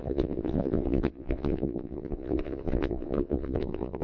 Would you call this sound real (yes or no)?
no